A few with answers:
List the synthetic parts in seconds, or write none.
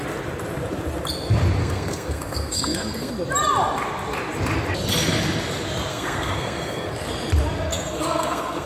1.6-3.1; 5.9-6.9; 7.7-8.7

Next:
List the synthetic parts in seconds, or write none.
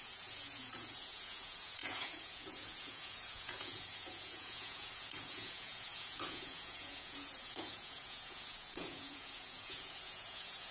0.0-10.7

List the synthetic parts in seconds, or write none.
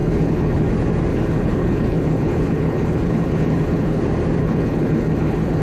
0.0-0.7; 1.1-4.0; 4.4-5.6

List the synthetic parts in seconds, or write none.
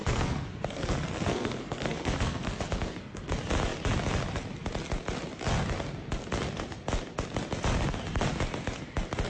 0.0-3.3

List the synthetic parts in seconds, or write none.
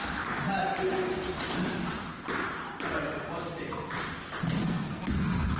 4.6-5.6